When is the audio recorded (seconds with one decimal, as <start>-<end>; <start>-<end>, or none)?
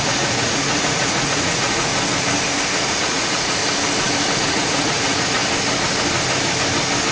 1.9-2.9; 3.6-4.4; 5.4-7.1